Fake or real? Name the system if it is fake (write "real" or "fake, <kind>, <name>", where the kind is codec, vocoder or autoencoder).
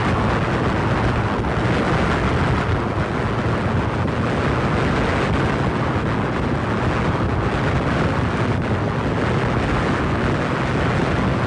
real